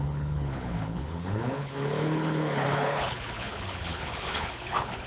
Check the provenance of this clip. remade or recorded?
remade